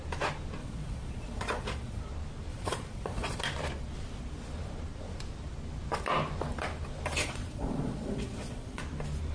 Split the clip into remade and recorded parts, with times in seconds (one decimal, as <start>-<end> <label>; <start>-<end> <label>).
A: 0.0-0.6 recorded; 0.6-2.0 remade; 2.0-2.5 recorded; 2.5-3.4 remade; 3.4-7.2 recorded; 7.2-8.8 remade; 8.8-9.3 recorded